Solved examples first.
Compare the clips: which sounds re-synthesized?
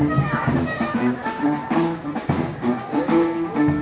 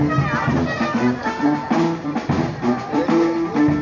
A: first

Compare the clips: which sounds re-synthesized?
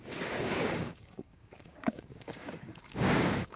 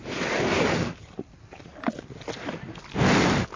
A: first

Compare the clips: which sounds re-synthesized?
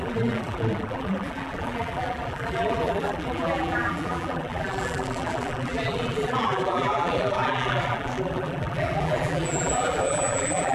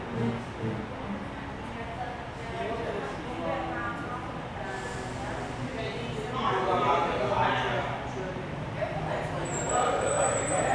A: first